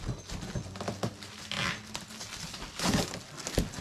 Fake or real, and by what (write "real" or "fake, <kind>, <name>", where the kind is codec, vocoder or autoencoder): real